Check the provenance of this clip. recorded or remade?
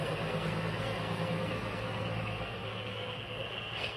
remade